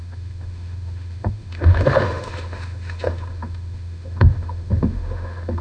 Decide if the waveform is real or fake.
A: fake